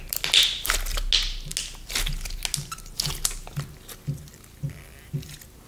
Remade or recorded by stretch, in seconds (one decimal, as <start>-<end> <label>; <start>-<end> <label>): 0.0-5.7 recorded